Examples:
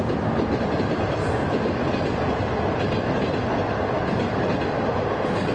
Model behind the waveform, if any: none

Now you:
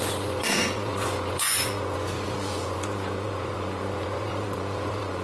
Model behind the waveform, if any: vocoder, Vocos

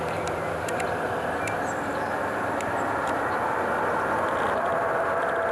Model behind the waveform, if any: none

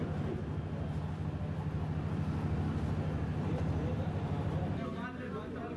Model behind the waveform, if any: none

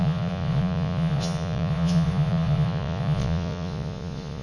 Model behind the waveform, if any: vocoder, Vocos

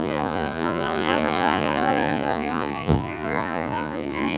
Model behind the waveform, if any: vocoder, Vocos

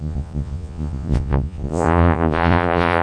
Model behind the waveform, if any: vocoder, Vocos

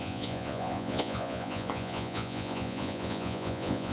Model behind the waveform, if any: vocoder, Vocos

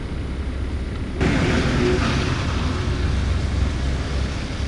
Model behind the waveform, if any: none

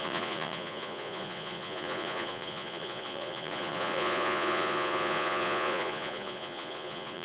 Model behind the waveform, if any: vocoder, Vocos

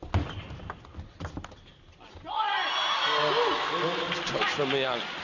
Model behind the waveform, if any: none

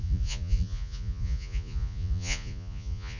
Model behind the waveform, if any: vocoder, Vocos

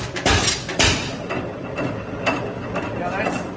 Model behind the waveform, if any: none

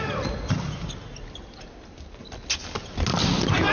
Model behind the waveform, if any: none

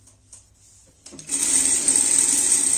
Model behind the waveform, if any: none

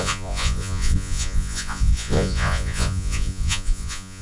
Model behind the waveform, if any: vocoder, Vocos